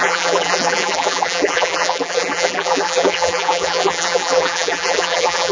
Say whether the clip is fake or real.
fake